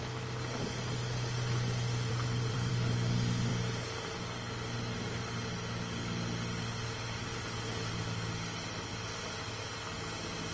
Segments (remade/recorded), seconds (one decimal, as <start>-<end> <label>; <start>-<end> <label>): 0.0-2.1 recorded; 2.1-2.7 remade; 2.7-10.5 recorded